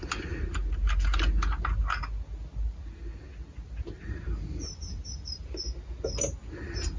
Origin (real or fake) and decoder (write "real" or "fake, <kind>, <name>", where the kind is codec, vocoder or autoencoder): real